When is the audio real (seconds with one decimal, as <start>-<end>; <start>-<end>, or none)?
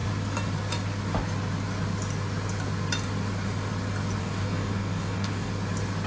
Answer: 0.0-4.2; 5.5-6.1